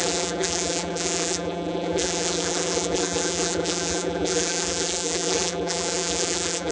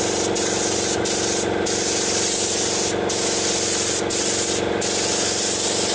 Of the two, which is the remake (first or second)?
first